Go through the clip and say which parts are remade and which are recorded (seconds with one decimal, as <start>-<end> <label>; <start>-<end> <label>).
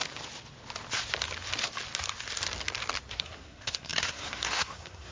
0.0-3.1 recorded; 3.1-5.1 remade